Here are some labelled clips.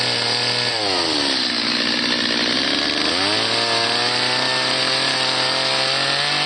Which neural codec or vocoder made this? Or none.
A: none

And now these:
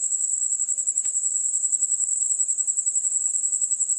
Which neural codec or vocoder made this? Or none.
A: none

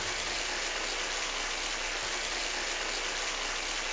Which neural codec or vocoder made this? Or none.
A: none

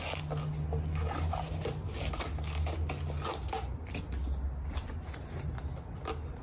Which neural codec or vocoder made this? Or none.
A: none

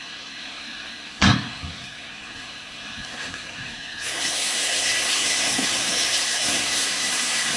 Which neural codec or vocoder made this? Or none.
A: codec, SNAC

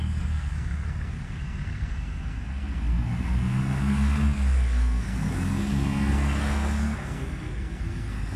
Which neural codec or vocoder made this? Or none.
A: codec, SNAC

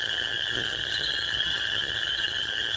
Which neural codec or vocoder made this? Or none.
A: vocoder, HiFi-GAN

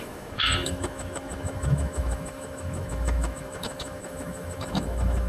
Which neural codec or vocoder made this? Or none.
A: autoencoder, DAC-VAE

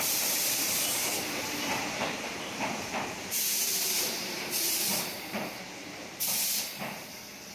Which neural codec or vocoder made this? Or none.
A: vocoder, BigVGAN v2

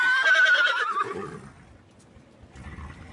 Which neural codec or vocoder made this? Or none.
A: none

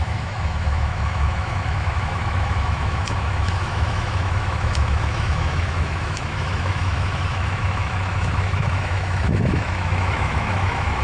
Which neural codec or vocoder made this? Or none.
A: autoencoder, DAC-VAE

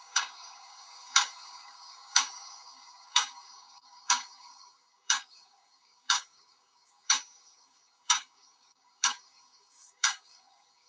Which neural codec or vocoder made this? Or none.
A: codec, DAC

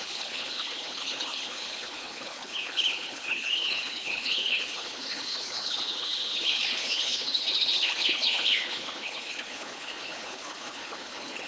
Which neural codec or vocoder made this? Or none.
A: codec, HILCodec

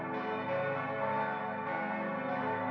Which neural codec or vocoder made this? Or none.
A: none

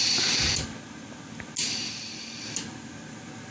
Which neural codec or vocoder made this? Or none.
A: none